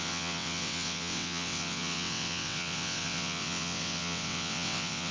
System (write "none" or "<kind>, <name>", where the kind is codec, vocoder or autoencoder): vocoder, WaveNeXt